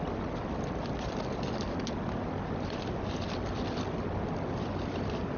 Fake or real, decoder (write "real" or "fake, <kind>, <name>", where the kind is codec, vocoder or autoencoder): real